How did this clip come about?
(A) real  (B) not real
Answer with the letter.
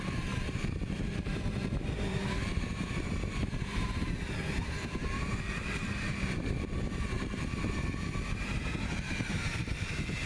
B